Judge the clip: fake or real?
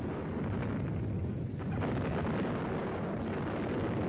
real